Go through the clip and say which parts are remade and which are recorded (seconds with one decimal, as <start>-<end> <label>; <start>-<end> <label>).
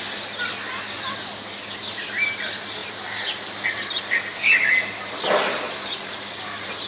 0.0-6.9 recorded